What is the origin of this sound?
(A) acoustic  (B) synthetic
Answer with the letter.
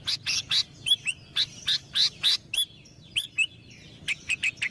A